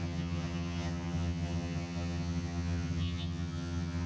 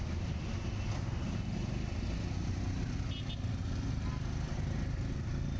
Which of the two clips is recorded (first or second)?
second